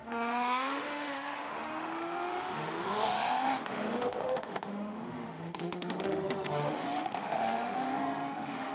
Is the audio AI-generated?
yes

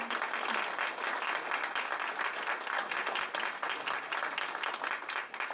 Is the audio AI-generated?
no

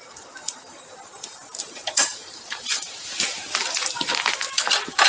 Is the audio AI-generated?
yes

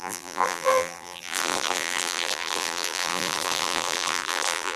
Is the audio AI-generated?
yes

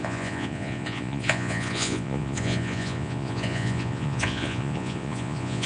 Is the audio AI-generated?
yes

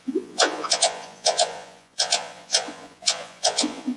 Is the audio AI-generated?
yes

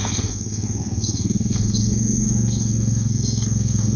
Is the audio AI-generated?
yes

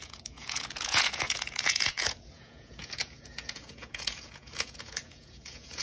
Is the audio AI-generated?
yes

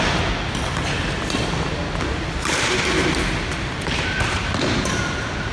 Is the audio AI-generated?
no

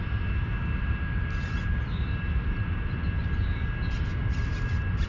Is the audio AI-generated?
no